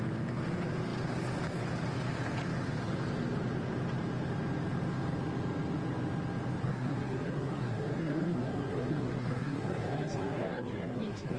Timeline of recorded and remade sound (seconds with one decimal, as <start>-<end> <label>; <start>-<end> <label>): 0.0-6.6 recorded; 6.6-11.4 remade